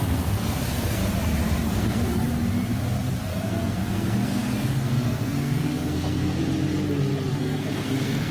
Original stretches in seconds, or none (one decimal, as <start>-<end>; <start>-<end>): 1.0-1.7; 2.2-3.3; 6.4-7.4